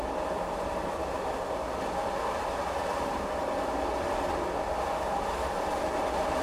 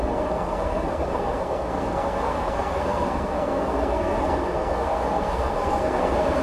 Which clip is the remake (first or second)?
second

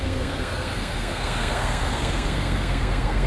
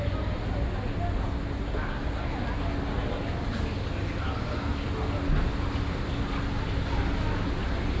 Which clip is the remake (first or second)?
first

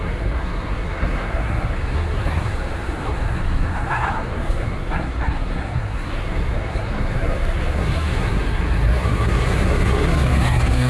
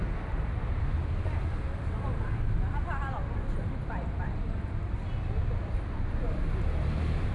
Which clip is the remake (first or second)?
first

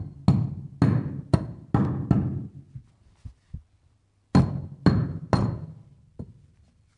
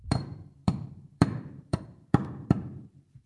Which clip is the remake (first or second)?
second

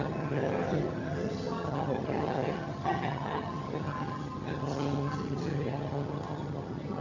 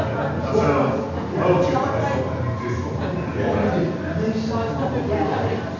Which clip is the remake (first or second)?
first